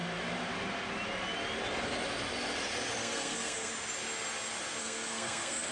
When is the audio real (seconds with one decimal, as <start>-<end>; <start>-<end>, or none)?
0.0-3.0; 3.7-4.8